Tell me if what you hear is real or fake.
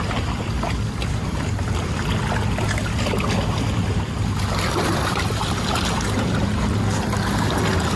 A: real